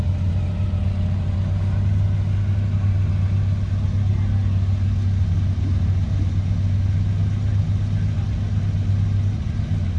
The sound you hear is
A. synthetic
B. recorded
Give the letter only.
B